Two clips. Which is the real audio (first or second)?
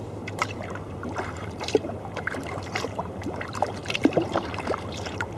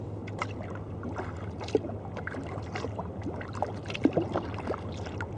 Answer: second